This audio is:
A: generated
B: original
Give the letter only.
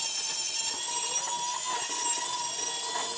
B